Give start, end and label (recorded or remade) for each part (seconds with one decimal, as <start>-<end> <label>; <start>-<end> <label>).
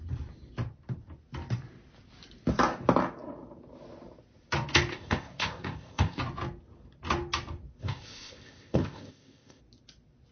0.0-4.9 recorded; 4.9-6.2 remade; 6.2-7.8 recorded; 7.8-9.6 remade; 9.6-10.3 recorded